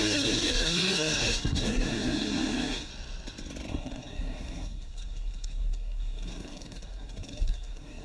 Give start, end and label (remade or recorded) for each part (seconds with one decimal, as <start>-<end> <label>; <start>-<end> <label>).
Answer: 0.0-2.9 remade; 2.9-3.7 recorded; 3.7-8.0 remade